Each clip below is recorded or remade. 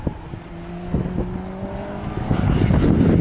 recorded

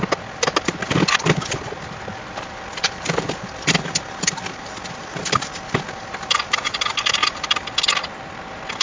recorded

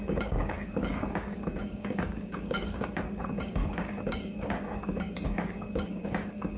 remade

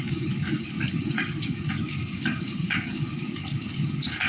remade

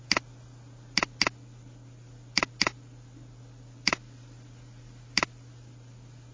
recorded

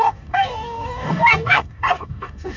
remade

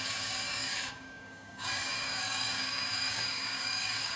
remade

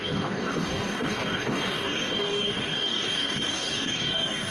remade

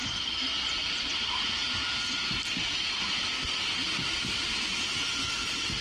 recorded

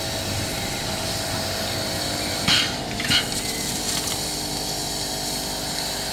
recorded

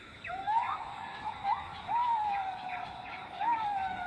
remade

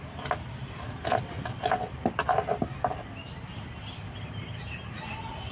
recorded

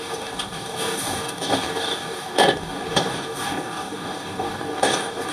remade